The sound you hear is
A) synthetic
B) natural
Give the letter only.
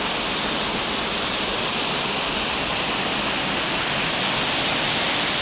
A